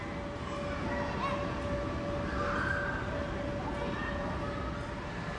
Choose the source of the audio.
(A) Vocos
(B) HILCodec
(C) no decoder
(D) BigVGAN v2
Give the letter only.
C